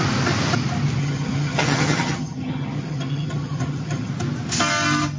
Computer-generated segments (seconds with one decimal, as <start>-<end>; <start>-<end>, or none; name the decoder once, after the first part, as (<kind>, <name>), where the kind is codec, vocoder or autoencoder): 1.0-4.1 (vocoder, HiFi-GAN)